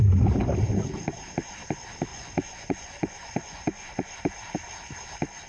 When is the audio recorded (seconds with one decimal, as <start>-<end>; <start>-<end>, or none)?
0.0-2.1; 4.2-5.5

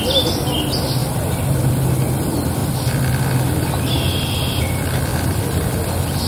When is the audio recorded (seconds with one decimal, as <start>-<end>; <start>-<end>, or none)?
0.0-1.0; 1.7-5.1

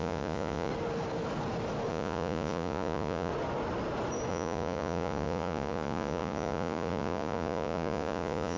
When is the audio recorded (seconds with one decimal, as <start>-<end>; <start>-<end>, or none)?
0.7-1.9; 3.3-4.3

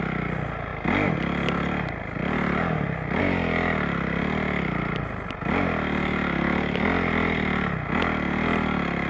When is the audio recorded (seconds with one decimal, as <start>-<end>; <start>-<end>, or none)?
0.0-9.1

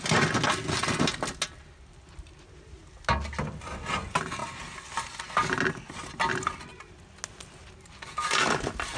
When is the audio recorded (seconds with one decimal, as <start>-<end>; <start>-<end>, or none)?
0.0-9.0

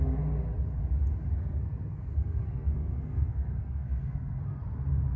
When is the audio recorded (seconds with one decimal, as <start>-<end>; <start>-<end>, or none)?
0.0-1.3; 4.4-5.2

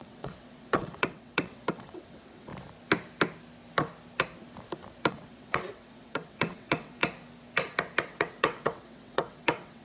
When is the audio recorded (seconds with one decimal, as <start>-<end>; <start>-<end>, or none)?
2.5-5.1; 7.0-8.0